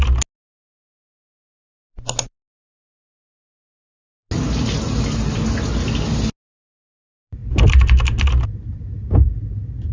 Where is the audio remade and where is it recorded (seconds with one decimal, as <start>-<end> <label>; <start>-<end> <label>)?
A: 0.0-9.9 recorded